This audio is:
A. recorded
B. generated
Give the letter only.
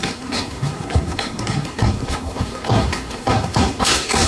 B